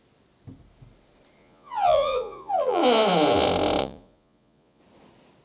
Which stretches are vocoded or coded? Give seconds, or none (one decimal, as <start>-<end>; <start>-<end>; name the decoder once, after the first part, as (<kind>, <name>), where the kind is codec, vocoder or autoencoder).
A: 1.4-2.8 (vocoder, Vocos); 3.8-4.8